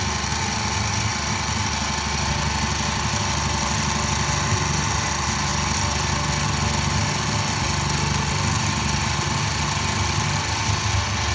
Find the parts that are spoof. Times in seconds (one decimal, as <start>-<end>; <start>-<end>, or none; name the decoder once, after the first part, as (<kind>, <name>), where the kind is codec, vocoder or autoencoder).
none